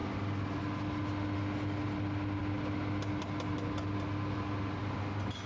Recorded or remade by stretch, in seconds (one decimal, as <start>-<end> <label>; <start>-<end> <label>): 0.0-5.5 recorded